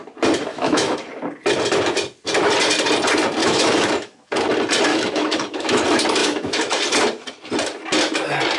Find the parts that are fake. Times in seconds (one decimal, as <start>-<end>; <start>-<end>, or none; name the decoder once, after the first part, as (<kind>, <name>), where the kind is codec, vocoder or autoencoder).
0.5-1.1 (autoencoder, DAC-VAE); 3.4-4.3; 4.9-5.8; 6.2-6.8